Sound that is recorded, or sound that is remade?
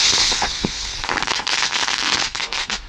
remade